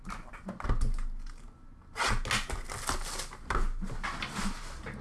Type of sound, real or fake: real